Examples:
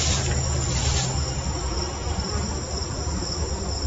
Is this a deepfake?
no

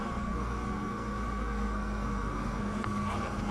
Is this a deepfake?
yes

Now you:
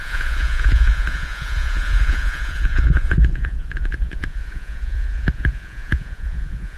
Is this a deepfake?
yes